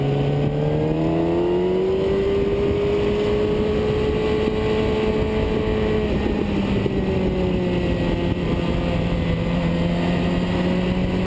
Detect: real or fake real